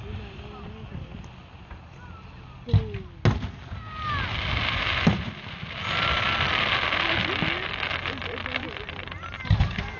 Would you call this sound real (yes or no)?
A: yes